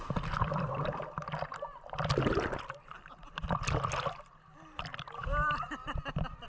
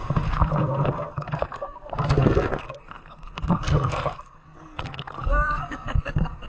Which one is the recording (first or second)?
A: first